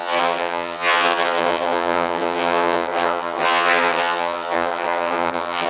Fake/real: fake